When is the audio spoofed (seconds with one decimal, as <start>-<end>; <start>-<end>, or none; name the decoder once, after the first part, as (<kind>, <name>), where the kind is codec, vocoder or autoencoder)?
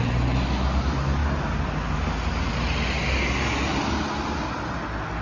none